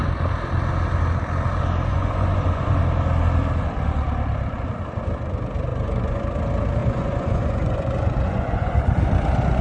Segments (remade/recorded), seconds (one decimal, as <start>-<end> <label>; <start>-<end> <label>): 0.0-1.9 recorded; 1.9-2.8 remade; 2.8-5.7 recorded; 5.7-6.2 remade; 6.2-6.8 recorded; 6.8-8.8 remade; 8.8-9.6 recorded